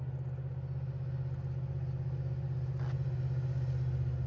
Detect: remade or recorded recorded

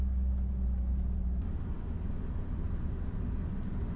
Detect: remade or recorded recorded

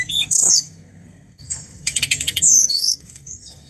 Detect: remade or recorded remade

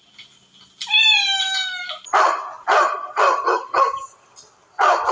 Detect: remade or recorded recorded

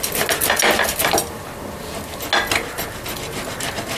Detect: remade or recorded recorded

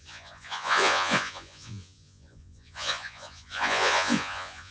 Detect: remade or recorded remade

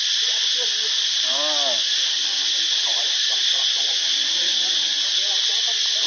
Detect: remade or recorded recorded